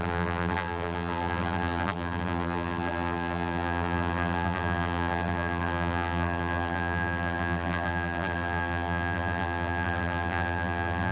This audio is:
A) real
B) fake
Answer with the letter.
B